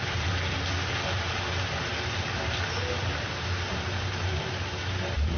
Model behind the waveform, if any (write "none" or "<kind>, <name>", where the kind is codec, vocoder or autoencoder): none